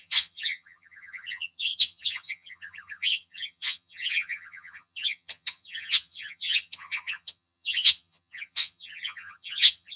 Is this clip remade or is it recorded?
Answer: remade